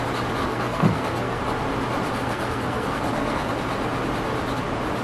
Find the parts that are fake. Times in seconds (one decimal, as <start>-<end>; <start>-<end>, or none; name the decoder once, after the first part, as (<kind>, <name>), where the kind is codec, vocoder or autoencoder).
0.4-1.4 (codec, SNAC); 2.2-3.5

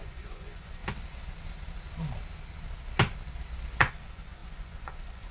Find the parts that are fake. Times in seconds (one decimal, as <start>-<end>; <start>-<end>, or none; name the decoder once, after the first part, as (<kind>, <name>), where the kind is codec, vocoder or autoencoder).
0.0-0.8 (vocoder, Vocos); 3.8-5.3

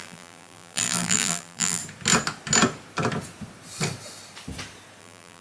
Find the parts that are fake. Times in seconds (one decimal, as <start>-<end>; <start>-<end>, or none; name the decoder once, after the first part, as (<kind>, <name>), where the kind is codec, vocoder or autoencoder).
0.0-1.8 (vocoder, BigVGAN v2); 5.0-5.4

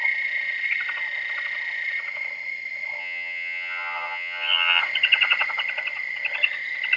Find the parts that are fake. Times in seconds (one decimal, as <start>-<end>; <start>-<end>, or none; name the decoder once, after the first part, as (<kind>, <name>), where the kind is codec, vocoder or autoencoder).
3.0-4.8 (vocoder, HiFi-GAN)

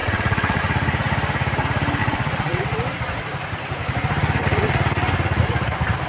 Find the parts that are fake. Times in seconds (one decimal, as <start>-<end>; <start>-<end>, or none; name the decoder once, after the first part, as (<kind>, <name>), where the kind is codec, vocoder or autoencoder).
0.0-0.6 (vocoder, WaveNeXt); 2.0-2.6